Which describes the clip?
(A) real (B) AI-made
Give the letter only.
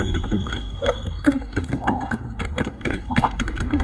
B